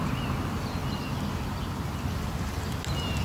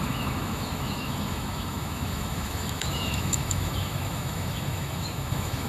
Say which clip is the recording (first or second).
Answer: first